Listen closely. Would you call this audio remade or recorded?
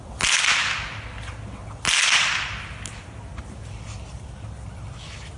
recorded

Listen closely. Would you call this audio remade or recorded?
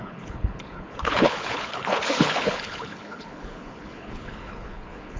remade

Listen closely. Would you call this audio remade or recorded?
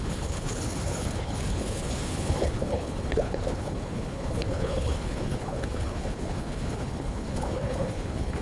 remade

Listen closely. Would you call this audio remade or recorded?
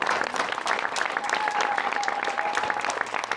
recorded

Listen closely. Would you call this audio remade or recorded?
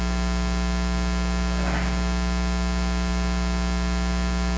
recorded